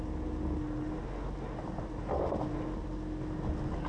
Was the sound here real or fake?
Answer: real